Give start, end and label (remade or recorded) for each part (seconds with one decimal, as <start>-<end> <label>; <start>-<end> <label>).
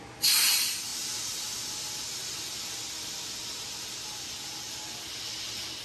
0.0-5.8 recorded